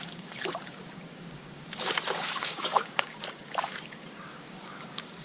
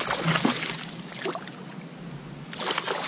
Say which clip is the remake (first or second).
first